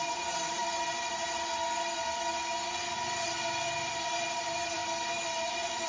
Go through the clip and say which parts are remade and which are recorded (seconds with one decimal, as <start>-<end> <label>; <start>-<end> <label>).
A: 0.0-0.6 remade; 0.6-4.1 recorded; 4.1-4.8 remade; 4.8-5.5 recorded; 5.5-5.9 remade